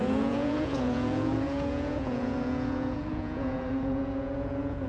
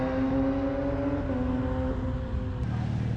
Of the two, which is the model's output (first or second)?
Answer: first